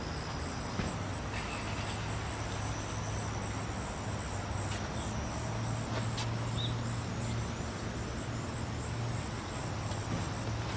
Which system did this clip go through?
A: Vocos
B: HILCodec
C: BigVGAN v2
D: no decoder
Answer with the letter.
D